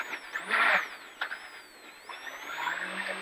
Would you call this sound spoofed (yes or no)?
no